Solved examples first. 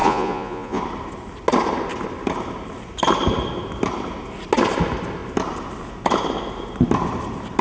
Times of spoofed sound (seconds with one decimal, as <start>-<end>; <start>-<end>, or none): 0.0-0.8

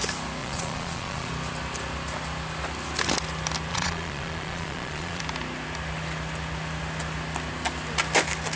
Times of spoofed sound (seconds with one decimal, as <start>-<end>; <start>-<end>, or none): 0.4-1.3; 3.7-5.2

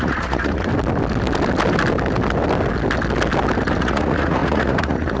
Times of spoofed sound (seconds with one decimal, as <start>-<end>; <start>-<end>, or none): 0.0-0.7; 3.8-5.2

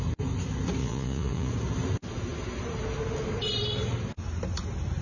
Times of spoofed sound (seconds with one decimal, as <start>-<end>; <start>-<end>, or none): 0.8-1.5

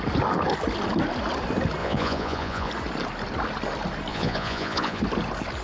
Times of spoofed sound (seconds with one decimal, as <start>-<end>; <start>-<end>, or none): 1.8-2.7; 4.1-5.0

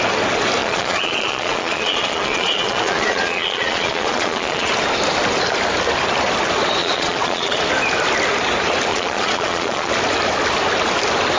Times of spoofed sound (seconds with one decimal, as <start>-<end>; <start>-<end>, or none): 0.6-4.7; 6.8-7.6; 8.9-9.9

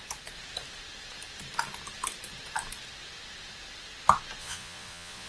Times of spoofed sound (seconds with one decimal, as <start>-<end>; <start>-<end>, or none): 4.4-5.3

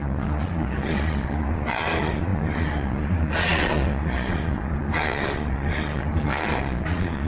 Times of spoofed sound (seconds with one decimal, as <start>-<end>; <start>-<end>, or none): 0.0-7.3